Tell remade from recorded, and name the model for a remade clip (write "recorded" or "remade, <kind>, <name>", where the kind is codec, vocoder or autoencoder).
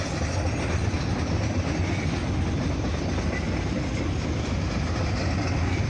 recorded